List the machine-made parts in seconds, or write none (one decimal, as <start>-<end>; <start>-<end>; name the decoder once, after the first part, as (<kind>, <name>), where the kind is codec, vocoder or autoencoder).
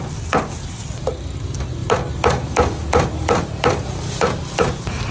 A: 1.8-5.1 (vocoder, BigVGAN v2)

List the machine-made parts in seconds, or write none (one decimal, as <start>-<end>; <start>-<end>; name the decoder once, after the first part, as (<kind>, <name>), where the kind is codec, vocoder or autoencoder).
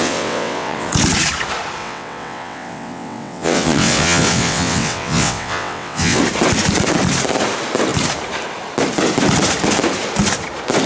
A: 0.0-0.9 (vocoder, WaveNeXt); 1.8-6.2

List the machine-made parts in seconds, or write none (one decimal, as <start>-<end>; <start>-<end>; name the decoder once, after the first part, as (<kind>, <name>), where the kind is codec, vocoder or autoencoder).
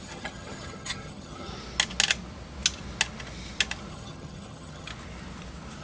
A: 0.0-1.5 (vocoder, HiFi-GAN); 3.9-4.9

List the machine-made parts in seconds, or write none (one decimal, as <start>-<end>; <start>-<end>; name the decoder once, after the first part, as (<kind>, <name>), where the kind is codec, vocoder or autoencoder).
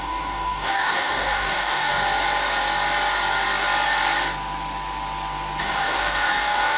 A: 0.0-1.9 (codec, DAC); 5.6-6.8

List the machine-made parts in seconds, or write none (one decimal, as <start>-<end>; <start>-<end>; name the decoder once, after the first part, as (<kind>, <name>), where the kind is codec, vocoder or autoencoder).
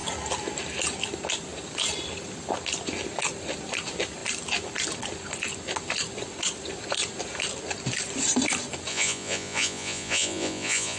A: 8.9-11.0 (vocoder, Vocos)